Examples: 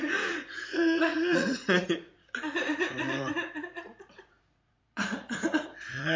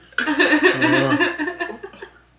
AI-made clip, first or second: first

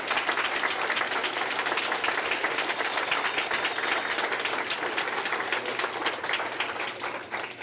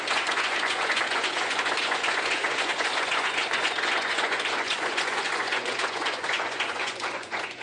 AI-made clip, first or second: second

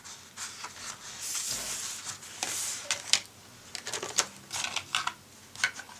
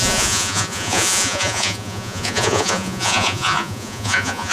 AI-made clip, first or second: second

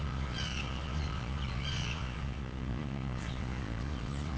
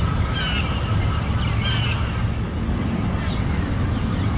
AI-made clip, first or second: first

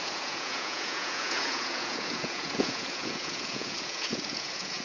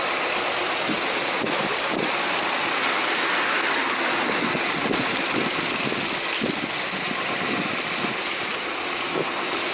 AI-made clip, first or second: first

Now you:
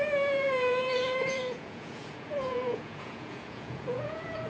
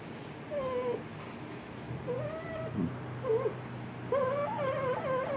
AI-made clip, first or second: first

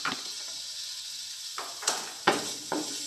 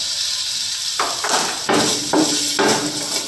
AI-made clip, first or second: first